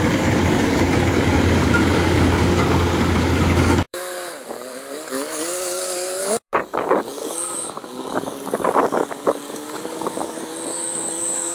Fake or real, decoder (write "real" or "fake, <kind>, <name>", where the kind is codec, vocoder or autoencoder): fake, codec, DAC